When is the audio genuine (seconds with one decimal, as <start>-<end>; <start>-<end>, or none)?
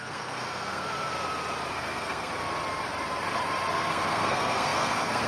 1.1-1.7; 2.3-3.7